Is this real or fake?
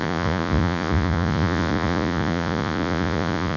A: fake